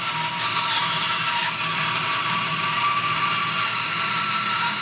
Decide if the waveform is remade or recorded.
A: remade